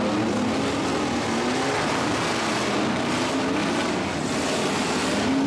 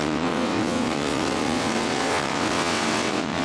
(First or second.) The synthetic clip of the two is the second